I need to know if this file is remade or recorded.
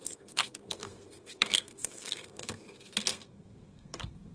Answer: remade